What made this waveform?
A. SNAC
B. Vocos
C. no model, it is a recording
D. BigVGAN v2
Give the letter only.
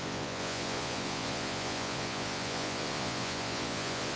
B